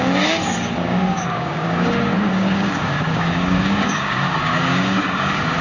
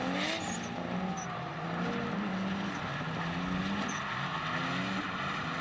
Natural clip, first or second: second